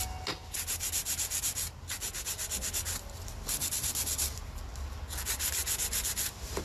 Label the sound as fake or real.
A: real